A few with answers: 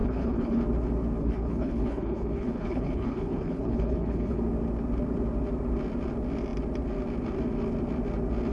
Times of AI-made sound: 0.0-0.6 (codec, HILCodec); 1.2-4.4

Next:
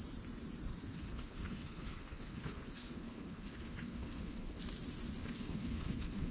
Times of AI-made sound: 0.8-4.6 (codec, HILCodec); 5.2-6.3

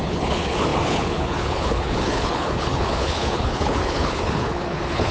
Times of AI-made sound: 0.0-5.1 (codec, HILCodec)

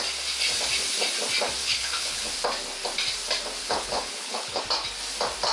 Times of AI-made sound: 1.6-2.3 (codec, HILCodec); 3.6-4.6

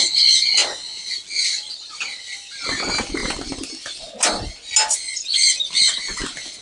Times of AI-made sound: none

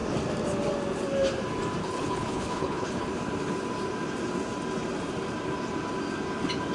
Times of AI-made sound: 1.8-3.1 (codec, HILCodec)

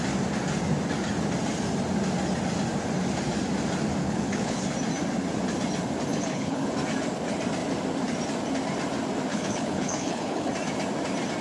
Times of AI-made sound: 4.0-4.6 (codec, HILCodec); 6.1-6.7; 9.3-10.5

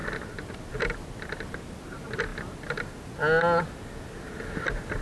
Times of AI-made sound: none